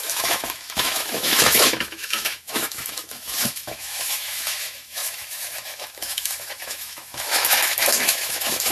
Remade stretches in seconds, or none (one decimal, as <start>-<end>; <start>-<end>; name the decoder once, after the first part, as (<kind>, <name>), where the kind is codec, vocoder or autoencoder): 0.0-8.7 (autoencoder, DAC-VAE)